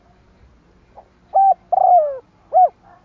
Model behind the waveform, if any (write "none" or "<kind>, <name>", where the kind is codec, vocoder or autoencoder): none